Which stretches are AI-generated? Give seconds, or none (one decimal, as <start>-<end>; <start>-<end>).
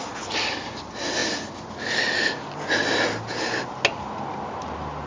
none